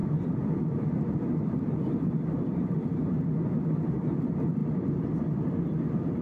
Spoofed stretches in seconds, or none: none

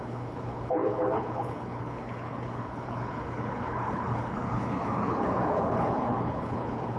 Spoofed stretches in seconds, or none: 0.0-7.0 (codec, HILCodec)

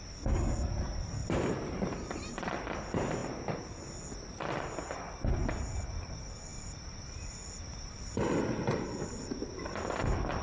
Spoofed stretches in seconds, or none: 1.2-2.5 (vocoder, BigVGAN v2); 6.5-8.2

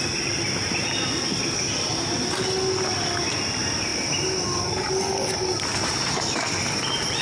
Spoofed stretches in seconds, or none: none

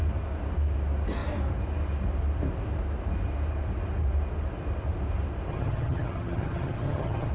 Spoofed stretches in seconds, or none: 5.5-7.3 (vocoder, HiFi-GAN)

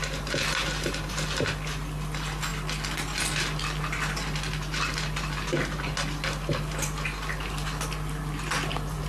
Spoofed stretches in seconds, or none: none

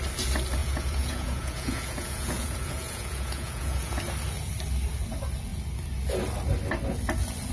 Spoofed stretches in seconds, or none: 0.6-4.0 (vocoder, Vocos)